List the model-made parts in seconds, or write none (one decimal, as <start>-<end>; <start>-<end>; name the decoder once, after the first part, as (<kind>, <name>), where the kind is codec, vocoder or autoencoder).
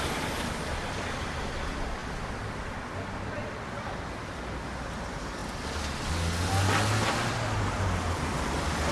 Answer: none